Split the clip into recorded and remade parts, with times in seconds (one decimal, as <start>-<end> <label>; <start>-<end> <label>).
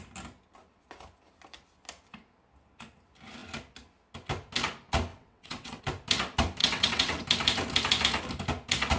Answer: 0.0-5.1 recorded; 5.1-5.8 remade; 5.8-6.6 recorded; 6.6-7.2 remade; 7.2-9.0 recorded